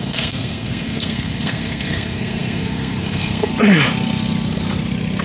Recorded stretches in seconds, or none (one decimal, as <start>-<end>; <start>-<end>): 3.5-5.2